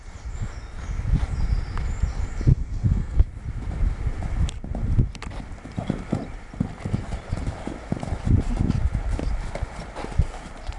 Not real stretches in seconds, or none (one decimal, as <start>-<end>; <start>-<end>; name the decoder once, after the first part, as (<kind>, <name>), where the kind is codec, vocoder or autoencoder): 2.5-3.3 (codec, SNAC)